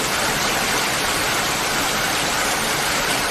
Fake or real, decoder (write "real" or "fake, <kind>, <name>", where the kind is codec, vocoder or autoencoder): fake, vocoder, BigVGAN v2